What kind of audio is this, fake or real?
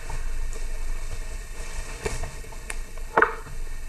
fake